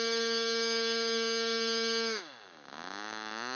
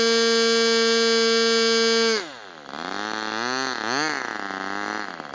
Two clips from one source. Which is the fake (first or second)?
first